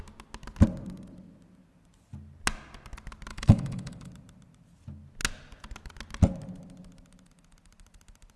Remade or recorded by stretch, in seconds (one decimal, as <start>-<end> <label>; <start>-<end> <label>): 0.0-3.3 recorded; 3.3-4.1 remade; 4.1-8.4 recorded

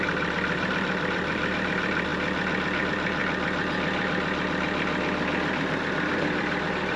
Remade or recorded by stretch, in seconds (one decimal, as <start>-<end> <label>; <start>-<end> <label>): 0.0-2.1 remade; 2.1-2.8 recorded; 2.8-3.2 remade; 3.2-5.3 recorded; 5.3-7.0 remade

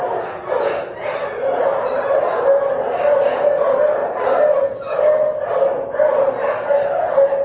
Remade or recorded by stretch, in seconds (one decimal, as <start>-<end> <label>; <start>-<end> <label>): 0.0-7.4 recorded

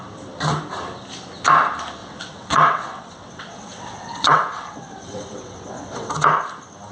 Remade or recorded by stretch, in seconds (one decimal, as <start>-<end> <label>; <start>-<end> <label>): 0.0-2.0 recorded; 2.0-6.1 remade; 6.1-6.9 recorded